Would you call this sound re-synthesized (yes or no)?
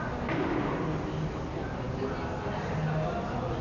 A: no